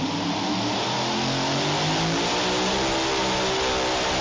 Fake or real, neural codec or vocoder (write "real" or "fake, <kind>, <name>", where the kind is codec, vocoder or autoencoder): real